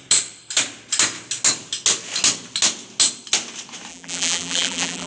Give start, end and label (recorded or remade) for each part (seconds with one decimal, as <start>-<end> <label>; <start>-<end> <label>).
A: 0.0-3.9 recorded; 3.9-5.1 remade